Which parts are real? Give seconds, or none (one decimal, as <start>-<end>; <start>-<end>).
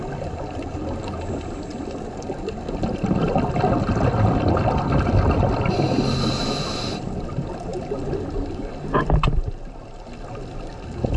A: 0.0-11.2